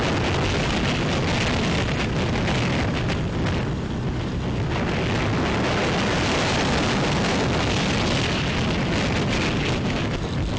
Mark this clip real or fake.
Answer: real